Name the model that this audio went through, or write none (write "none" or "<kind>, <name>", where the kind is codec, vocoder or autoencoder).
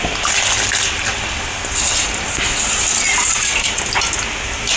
none